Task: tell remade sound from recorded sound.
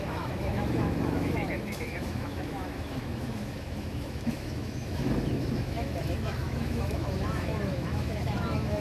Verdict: remade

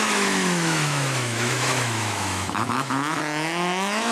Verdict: remade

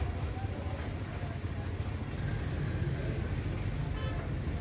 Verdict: recorded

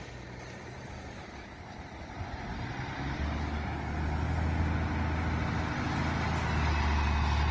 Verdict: recorded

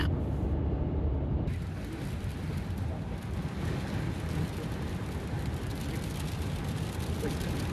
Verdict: recorded